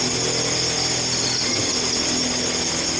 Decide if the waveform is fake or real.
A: real